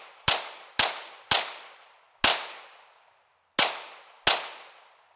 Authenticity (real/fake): real